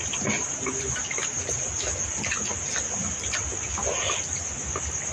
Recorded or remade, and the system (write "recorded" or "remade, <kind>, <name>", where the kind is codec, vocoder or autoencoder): recorded